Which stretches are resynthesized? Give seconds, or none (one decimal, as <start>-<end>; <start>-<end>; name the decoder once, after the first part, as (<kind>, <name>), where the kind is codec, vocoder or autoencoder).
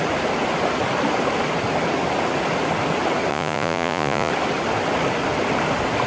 3.3-4.3 (vocoder, Vocos)